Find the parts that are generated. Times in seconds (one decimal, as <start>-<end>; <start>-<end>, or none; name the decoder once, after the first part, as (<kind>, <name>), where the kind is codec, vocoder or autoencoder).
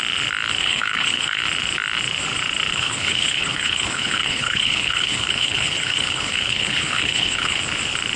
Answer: 0.6-1.4 (codec, HILCodec); 2.7-7.6